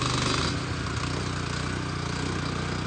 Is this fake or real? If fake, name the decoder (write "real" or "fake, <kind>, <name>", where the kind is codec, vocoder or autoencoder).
real